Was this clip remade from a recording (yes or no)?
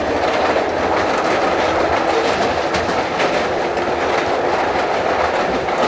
no